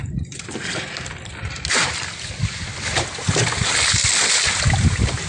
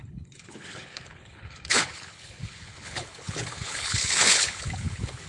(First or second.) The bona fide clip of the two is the first